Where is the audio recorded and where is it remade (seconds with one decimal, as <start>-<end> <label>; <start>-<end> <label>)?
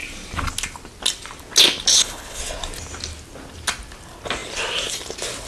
0.0-1.9 recorded; 1.9-2.4 remade; 2.4-5.5 recorded